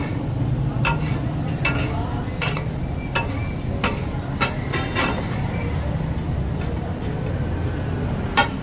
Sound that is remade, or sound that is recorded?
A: recorded